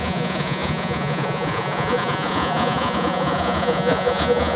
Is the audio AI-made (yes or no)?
yes